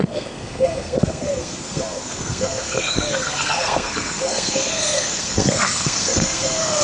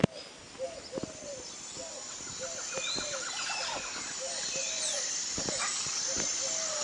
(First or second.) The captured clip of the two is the second